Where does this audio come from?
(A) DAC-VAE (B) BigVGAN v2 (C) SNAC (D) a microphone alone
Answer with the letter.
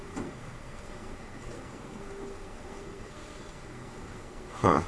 C